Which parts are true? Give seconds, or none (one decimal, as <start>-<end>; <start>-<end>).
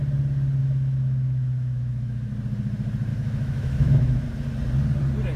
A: 0.0-0.6; 2.3-3.1; 4.2-5.4